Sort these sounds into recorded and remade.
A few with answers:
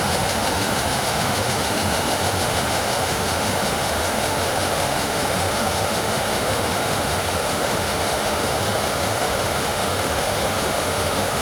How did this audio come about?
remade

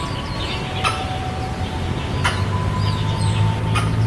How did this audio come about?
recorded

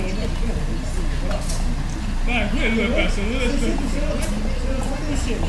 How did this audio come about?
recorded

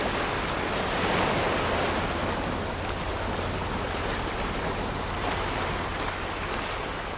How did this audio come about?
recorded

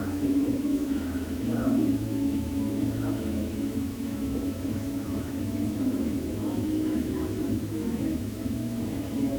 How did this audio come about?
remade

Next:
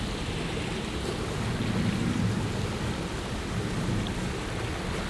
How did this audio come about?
recorded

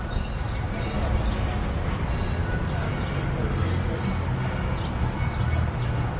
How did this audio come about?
recorded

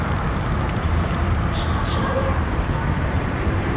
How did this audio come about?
remade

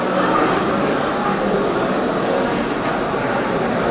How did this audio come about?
recorded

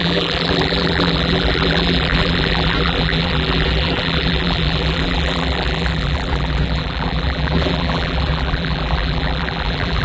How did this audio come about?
remade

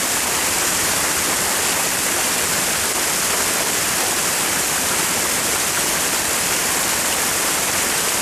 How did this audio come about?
recorded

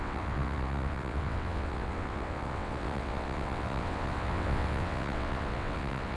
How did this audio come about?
remade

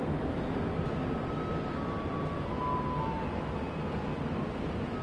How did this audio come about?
recorded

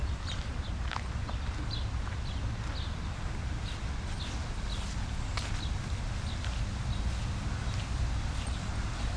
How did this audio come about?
recorded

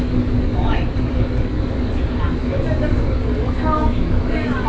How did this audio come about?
remade